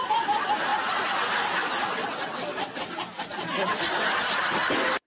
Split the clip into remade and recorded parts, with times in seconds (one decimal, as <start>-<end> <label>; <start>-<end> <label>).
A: 0.0-5.1 recorded